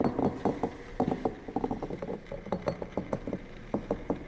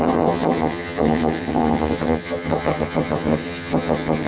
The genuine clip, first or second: first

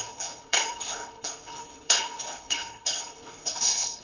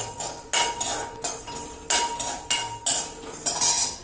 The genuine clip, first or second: second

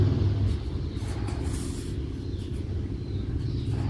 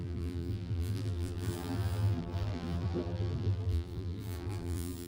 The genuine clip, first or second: first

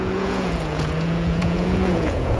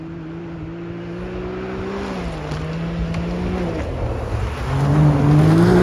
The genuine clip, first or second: second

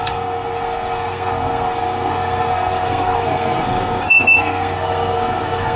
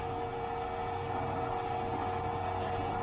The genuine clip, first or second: second